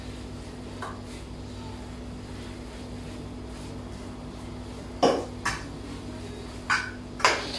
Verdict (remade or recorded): recorded